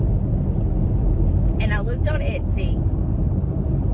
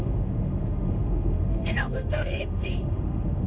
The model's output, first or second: second